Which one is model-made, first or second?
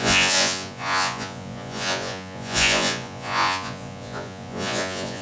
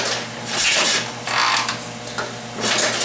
first